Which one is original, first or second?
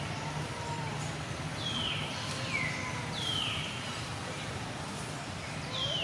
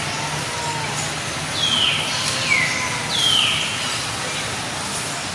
second